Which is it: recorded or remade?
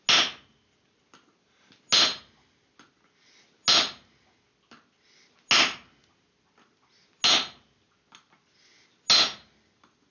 recorded